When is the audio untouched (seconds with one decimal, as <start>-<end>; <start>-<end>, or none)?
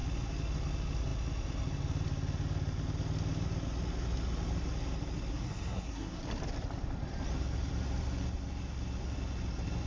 0.0-5.3; 6.2-9.9